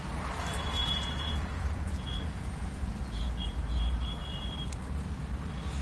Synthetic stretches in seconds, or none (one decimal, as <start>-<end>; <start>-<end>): 0.8-4.3